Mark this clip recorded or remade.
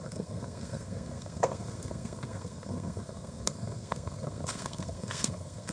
remade